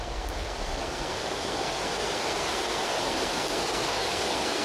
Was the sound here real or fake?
fake